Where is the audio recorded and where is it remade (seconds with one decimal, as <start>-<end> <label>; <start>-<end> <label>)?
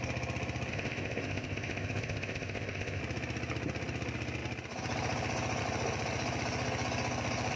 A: 0.0-0.7 recorded; 0.7-3.0 remade; 3.0-7.6 recorded